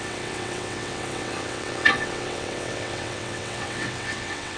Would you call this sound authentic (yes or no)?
no